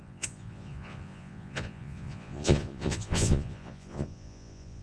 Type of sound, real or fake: fake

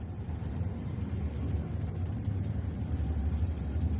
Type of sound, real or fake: fake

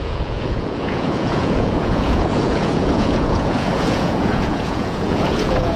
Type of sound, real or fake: fake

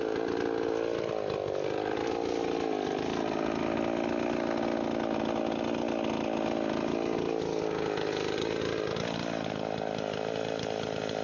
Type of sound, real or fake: real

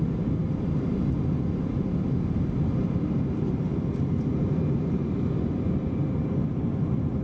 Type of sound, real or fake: real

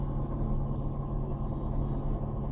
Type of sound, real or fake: real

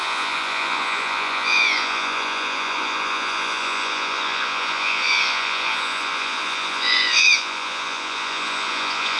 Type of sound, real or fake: fake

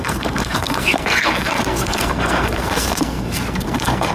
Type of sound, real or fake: fake